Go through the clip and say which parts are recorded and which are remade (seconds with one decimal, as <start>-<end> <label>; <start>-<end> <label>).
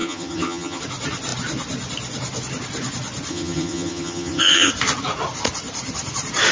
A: 0.0-0.8 remade; 0.8-3.3 recorded; 3.3-4.7 remade; 4.7-6.5 recorded